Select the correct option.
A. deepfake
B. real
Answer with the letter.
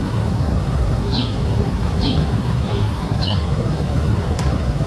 A